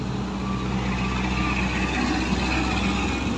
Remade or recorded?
recorded